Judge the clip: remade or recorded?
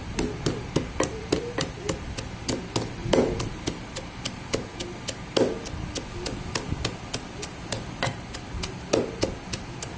recorded